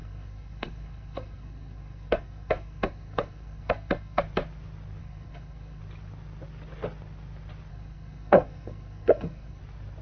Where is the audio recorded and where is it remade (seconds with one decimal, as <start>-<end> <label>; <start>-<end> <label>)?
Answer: 0.0-4.2 remade; 4.2-5.0 recorded; 5.0-5.8 remade; 5.8-7.7 recorded; 7.7-9.6 remade; 9.6-10.0 recorded